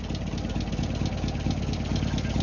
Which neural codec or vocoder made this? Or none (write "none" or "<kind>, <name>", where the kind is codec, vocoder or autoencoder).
none